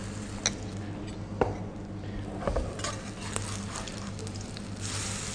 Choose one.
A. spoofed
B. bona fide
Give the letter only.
B